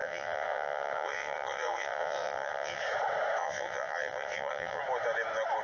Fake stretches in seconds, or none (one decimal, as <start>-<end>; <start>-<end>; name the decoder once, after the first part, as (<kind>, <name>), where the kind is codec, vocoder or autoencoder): 0.0-2.8 (vocoder, WaveNeXt); 3.4-4.8